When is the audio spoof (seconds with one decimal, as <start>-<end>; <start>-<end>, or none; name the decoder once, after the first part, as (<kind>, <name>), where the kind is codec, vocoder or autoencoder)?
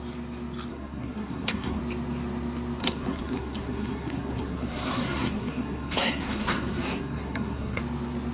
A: 0.7-1.8 (codec, SNAC); 2.8-7.8